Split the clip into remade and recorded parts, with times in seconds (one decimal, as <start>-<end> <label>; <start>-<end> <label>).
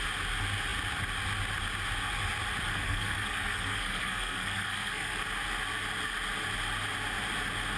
0.0-2.7 recorded; 2.7-5.2 remade; 5.2-7.8 recorded